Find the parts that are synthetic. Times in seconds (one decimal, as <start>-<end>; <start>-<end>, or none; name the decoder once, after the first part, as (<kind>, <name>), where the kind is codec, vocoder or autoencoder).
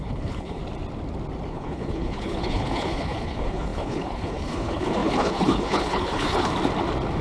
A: 0.0-0.6 (codec, HILCodec); 1.5-6.5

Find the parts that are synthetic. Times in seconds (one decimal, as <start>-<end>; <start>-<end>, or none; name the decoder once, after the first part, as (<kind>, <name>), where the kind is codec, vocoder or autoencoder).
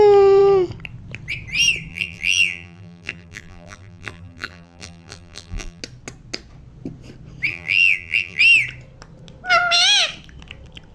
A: 1.9-5.8 (vocoder, BigVGAN v2); 7.5-8.4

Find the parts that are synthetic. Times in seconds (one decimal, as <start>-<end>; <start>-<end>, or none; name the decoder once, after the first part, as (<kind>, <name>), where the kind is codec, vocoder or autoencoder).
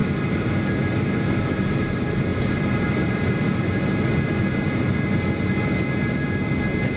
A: 0.0-0.8 (vocoder, BigVGAN v2)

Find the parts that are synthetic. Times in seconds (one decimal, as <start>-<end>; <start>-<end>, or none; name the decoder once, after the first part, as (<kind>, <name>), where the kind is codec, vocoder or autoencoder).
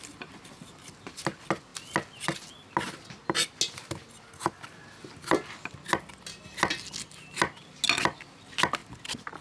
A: none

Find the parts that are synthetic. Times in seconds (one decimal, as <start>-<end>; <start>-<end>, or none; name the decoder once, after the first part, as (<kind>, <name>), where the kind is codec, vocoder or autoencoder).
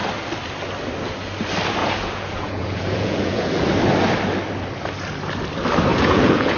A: 1.8-3.7 (vocoder, Vocos); 5.9-6.6